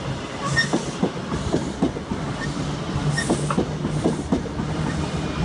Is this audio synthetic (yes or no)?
no